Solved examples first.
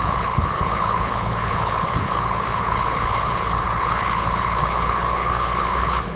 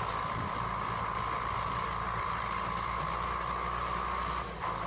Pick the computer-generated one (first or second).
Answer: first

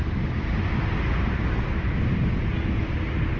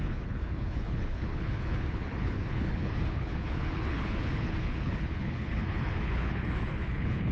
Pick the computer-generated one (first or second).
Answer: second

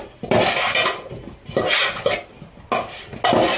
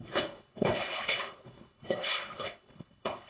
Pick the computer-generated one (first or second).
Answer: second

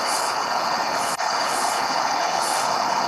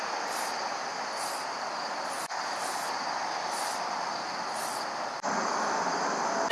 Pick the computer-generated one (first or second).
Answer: first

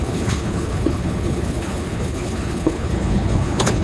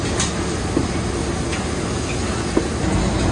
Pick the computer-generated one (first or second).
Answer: first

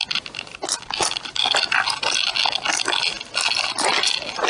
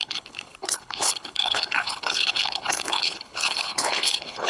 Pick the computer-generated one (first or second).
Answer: second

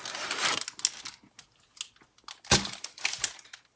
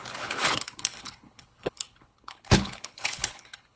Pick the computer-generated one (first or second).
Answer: second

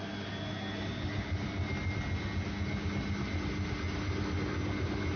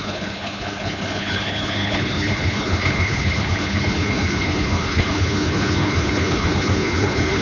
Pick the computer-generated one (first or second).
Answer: second